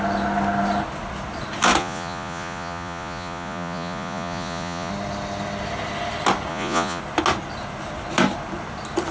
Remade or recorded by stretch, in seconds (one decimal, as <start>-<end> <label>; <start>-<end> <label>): 0.0-1.8 recorded; 1.8-4.9 remade; 4.9-6.5 recorded; 6.5-7.0 remade; 7.0-9.1 recorded